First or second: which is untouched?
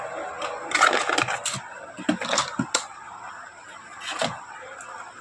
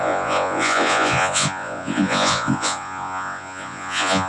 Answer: first